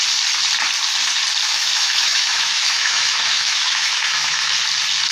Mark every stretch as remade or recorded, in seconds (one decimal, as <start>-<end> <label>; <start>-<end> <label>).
0.0-1.4 recorded; 1.4-4.5 remade; 4.5-5.1 recorded